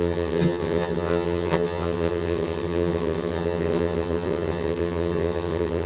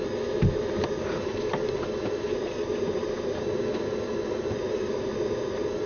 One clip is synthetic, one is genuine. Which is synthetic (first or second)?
first